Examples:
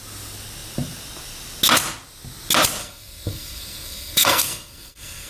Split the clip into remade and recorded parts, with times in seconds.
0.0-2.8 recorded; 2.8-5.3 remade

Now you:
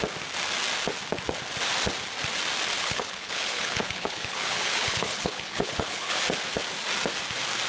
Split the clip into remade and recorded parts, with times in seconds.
0.0-2.8 recorded; 2.8-6.2 remade; 6.2-7.7 recorded

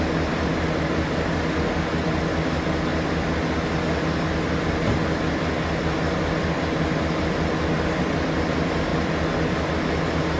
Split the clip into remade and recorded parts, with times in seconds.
0.0-10.4 recorded

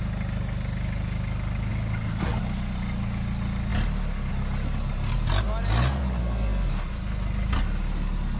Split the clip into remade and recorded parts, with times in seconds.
0.0-6.2 recorded; 6.2-6.7 remade; 6.7-8.4 recorded

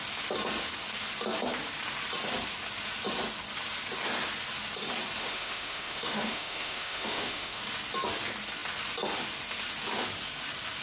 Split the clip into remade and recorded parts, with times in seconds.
0.0-5.2 recorded; 5.2-7.6 remade; 7.6-10.8 recorded

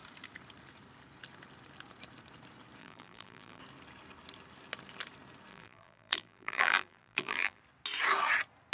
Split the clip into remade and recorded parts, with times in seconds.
0.0-2.8 recorded; 2.8-3.6 remade; 3.6-5.5 recorded; 5.5-7.6 remade; 7.6-8.7 recorded